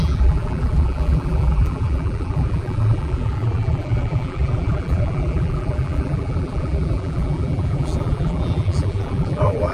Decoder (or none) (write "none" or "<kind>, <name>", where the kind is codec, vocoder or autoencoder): vocoder, BigVGAN v2